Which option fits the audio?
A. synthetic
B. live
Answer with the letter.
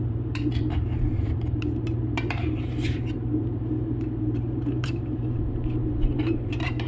A